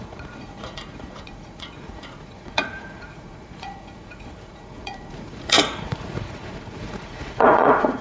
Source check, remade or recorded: remade